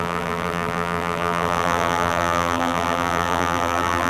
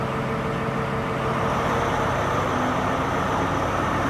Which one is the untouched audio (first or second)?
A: second